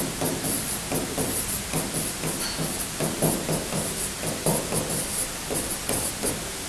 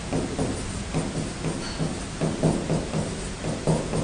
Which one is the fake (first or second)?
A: first